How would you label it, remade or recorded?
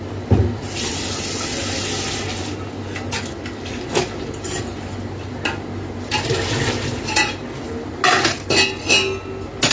recorded